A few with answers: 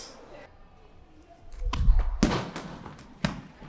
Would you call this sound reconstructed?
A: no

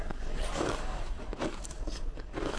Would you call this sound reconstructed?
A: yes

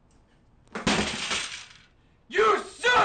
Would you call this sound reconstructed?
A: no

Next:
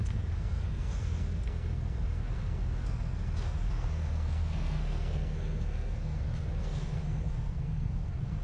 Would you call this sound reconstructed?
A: yes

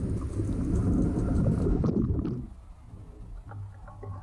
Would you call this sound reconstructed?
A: no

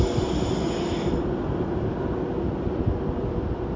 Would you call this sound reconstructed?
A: no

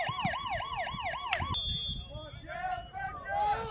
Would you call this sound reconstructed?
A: no